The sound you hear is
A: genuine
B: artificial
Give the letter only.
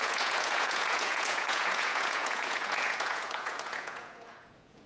B